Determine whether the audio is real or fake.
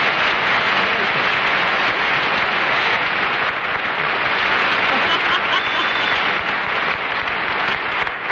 fake